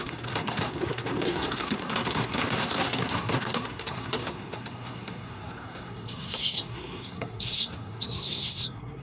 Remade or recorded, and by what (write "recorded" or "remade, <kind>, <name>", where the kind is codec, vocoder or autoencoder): remade, codec, SNAC